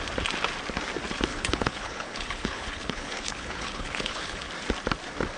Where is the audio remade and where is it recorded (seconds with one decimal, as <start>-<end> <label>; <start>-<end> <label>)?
0.0-1.3 recorded; 1.3-4.5 remade; 4.5-5.4 recorded